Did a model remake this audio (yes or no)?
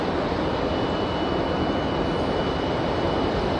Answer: no